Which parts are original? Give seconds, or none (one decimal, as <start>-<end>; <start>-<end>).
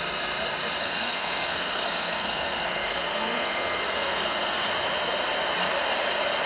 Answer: 0.0-0.8; 4.7-6.5